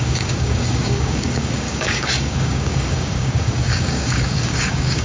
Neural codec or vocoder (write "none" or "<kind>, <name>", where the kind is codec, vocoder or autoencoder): codec, DAC